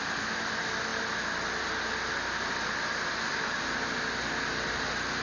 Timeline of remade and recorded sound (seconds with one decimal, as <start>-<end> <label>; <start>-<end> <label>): 0.0-5.2 recorded